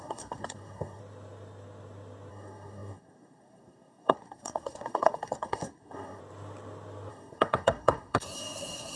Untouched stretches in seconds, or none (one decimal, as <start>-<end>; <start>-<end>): 1.0-2.3; 6.2-7.1